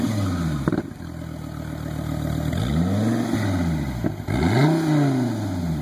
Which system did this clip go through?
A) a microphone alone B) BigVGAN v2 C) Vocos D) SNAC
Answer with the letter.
A